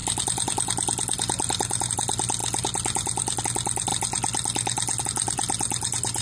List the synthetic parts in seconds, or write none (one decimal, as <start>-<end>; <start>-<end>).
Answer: none